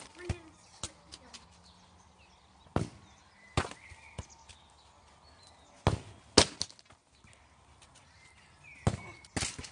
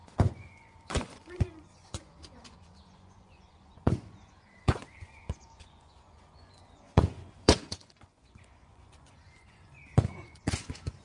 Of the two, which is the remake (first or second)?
second